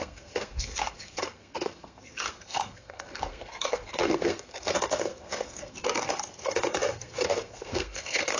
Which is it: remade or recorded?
remade